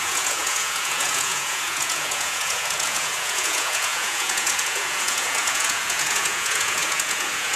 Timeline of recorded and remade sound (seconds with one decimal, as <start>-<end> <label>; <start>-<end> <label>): 0.0-7.6 remade